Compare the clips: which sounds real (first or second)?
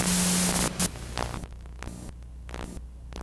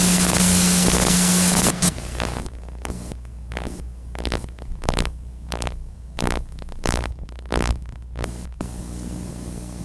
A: first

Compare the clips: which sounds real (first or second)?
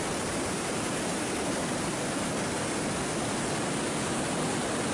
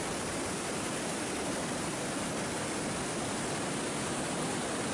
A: first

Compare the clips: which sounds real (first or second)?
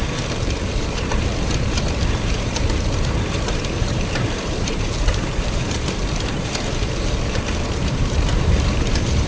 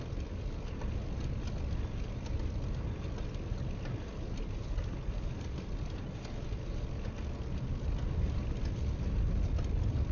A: second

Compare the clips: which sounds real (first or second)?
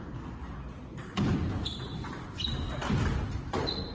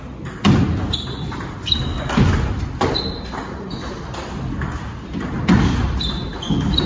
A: second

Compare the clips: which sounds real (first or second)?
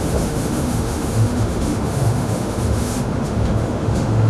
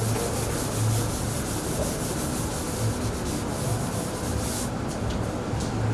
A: second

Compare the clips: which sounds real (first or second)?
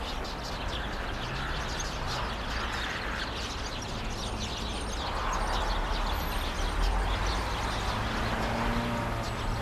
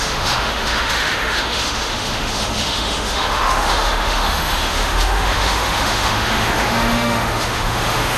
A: first